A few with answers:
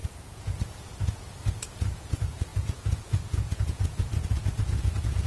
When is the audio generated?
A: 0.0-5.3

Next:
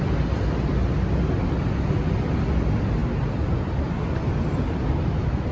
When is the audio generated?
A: none

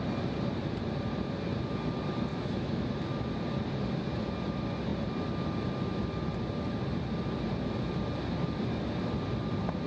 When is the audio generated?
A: 2.3-2.9

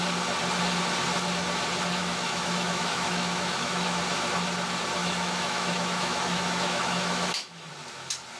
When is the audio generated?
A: 2.0-4.0; 5.0-7.7

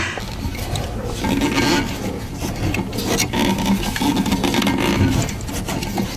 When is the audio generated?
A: none

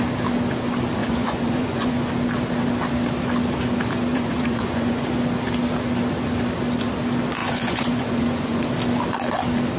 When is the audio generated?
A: 1.0-2.1; 4.1-5.1; 7.4-8.6

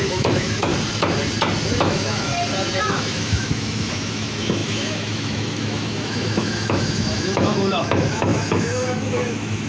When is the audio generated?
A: 0.0-0.7; 1.8-2.3; 2.8-9.7